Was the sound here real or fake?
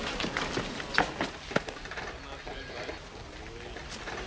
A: real